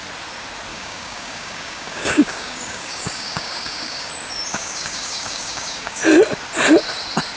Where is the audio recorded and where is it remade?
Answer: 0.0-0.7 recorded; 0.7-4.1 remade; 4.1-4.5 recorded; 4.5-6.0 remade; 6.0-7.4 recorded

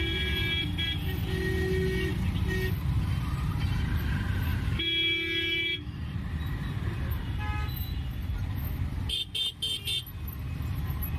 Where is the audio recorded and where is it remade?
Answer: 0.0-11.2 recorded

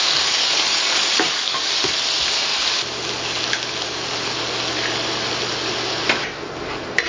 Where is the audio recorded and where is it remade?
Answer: 0.0-0.4 recorded; 0.4-1.7 remade; 1.7-7.1 recorded